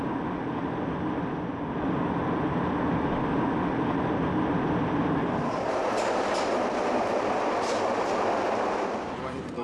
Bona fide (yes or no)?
yes